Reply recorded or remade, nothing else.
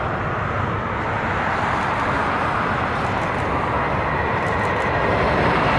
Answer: recorded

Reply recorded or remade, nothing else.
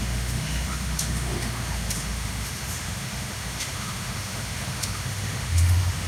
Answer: remade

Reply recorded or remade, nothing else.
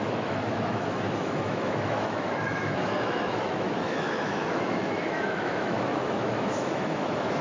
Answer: remade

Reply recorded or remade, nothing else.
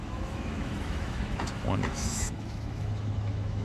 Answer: remade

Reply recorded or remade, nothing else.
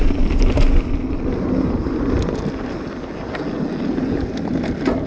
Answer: recorded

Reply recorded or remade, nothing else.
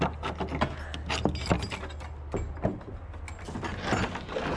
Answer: recorded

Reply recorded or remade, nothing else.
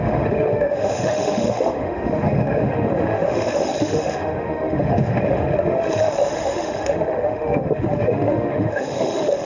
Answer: remade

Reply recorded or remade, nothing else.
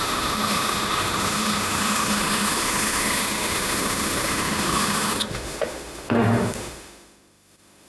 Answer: remade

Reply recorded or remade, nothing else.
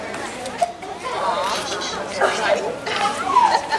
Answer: recorded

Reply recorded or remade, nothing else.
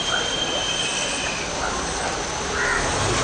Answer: recorded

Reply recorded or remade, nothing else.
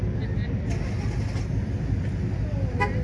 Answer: recorded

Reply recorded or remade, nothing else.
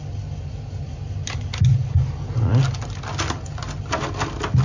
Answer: recorded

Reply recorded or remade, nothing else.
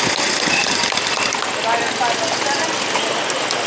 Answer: recorded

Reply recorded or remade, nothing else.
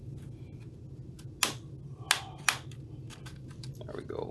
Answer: recorded